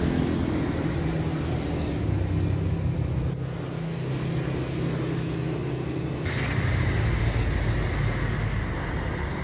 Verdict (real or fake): real